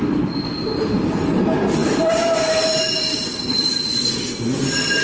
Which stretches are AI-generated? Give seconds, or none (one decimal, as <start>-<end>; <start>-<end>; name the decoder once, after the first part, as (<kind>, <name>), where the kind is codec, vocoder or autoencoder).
none